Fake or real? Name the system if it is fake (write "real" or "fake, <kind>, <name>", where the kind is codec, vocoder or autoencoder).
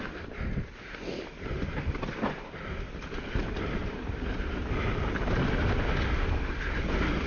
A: real